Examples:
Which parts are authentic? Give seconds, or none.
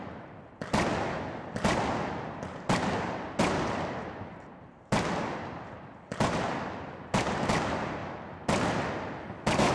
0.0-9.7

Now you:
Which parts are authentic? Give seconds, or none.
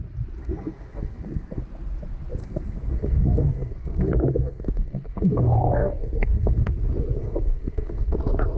0.0-0.4; 1.6-2.4; 6.7-7.2; 8.2-8.6